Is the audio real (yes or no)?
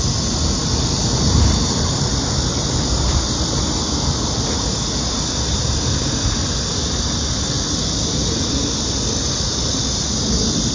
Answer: yes